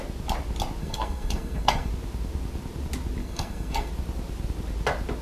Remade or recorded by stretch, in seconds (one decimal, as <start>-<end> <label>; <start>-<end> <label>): 0.0-0.8 recorded; 0.8-1.9 remade; 1.9-3.2 recorded; 3.2-3.9 remade; 3.9-5.2 recorded